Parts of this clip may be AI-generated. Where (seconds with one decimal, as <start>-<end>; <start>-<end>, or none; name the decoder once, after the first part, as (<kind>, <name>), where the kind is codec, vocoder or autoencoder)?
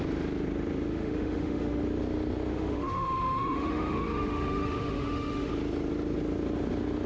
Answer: 0.9-1.8 (autoencoder, DAC-VAE); 2.5-5.5